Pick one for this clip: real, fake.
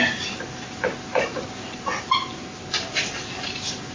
real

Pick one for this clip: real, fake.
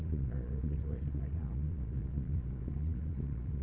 fake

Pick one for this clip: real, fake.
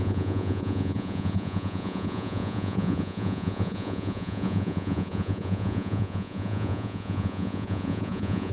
fake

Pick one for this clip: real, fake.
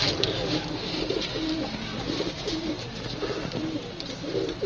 real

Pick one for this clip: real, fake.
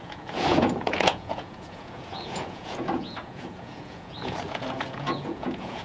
fake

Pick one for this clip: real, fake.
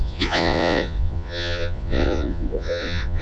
fake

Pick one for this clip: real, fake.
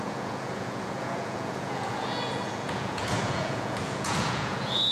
fake